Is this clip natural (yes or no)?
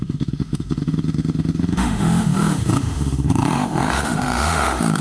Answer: no